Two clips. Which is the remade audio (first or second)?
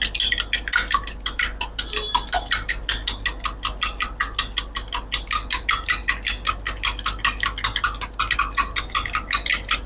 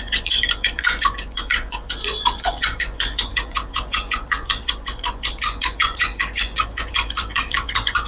second